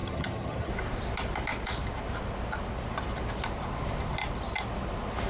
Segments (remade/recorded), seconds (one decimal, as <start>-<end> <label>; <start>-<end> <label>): 0.0-0.7 remade; 0.7-5.3 recorded